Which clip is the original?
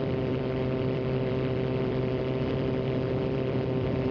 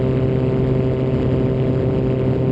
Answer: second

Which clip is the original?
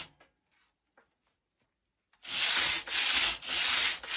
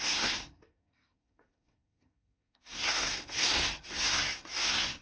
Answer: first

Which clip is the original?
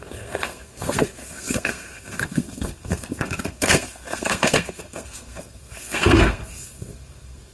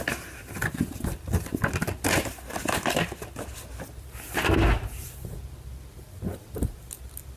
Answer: second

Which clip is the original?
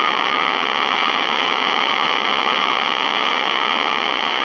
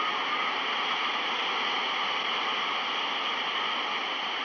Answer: second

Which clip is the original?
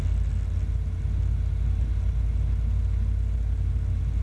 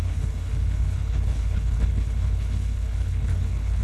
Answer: first